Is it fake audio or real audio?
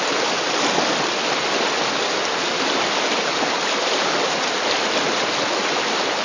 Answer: real